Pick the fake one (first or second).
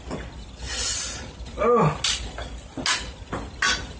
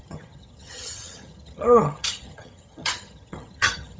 second